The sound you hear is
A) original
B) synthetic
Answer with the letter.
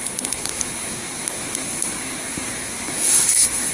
B